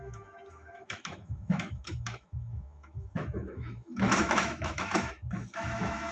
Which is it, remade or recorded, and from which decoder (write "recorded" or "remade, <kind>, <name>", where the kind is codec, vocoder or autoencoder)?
remade, autoencoder, DAC-VAE